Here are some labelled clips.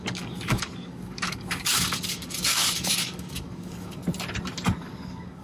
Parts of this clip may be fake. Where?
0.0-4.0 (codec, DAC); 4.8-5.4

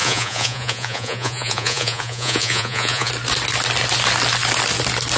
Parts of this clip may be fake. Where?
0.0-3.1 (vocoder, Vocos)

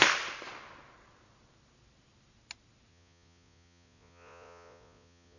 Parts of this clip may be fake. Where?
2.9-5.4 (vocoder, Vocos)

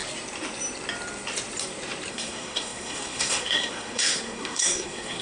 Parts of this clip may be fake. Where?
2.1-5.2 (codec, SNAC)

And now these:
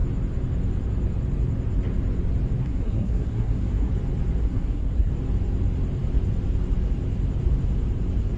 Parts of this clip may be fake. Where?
2.6-3.9 (codec, SNAC); 4.4-5.1

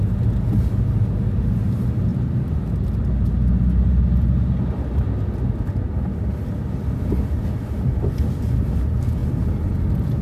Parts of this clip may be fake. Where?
none

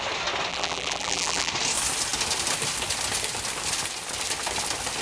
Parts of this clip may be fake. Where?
0.5-1.5 (vocoder, BigVGAN v2)

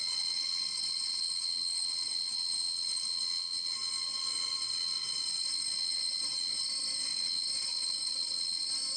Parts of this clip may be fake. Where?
0.0-9.0 (vocoder, WaveNeXt)